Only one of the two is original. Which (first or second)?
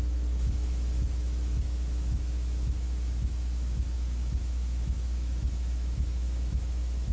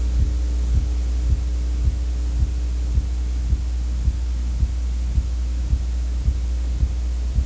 second